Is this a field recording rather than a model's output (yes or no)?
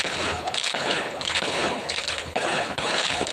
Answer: no